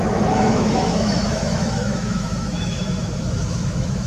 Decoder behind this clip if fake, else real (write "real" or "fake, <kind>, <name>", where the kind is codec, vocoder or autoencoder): fake, autoencoder, DAC-VAE